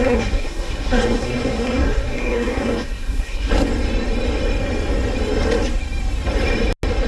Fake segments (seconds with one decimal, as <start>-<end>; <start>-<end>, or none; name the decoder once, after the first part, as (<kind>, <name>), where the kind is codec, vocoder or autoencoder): 0.0-3.5 (codec, SNAC)

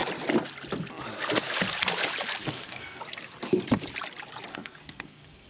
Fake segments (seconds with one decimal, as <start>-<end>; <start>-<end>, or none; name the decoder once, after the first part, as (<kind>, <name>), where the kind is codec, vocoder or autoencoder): 2.4-3.0 (codec, SNAC); 4.5-5.5

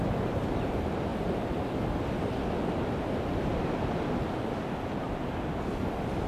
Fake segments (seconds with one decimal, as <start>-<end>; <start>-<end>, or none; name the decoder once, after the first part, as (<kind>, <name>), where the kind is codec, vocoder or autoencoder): none

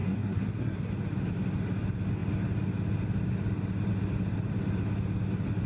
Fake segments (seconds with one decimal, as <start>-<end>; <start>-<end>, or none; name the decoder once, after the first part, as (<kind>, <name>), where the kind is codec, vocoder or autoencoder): 0.0-0.9 (codec, SNAC)

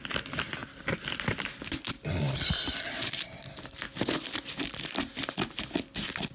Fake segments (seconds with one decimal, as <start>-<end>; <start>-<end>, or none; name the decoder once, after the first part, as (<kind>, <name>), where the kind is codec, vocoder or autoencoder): none

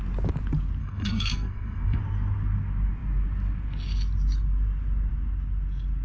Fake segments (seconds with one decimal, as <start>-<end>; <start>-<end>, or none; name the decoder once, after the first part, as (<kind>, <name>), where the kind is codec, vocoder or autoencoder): 0.8-2.0 (codec, SNAC)

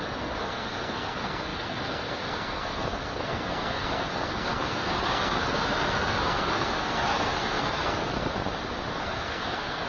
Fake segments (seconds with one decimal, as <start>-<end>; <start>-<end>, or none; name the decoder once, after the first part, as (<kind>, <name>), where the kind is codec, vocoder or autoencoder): 0.0-8.3 (codec, SNAC); 8.9-9.9